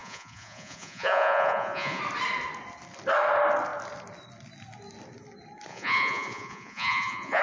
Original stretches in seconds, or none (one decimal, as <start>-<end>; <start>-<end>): 2.0-5.7